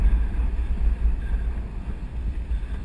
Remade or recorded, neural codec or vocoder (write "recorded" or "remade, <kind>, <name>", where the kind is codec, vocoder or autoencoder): recorded